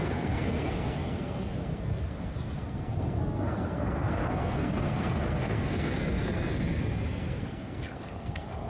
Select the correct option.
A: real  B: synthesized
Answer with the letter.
B